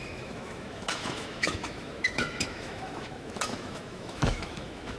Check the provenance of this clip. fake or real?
fake